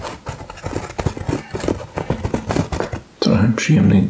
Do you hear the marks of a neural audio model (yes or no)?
no